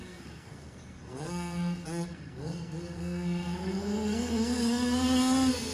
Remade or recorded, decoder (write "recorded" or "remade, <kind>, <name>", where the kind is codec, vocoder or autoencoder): remade, codec, SNAC